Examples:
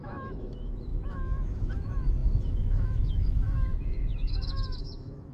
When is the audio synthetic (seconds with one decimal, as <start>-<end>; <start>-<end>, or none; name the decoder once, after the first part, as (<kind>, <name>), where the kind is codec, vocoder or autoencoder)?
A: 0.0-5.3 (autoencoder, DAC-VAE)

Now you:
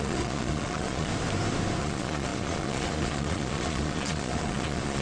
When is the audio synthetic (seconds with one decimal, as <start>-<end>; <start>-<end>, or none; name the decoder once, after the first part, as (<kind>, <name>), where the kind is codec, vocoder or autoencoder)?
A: 0.0-1.1 (vocoder, Vocos); 1.8-5.0

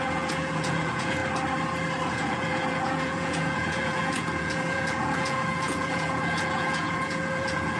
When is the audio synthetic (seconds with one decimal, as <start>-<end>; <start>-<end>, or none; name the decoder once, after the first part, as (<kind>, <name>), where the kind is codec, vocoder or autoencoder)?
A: 0.0-1.2 (vocoder, Vocos); 2.1-7.8